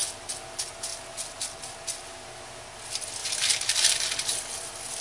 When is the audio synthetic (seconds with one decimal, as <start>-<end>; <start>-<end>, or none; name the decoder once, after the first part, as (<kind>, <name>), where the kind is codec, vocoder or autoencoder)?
3.2-4.1 (vocoder, BigVGAN v2)